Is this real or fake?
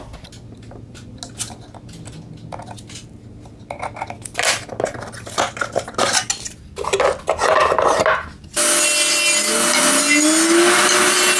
real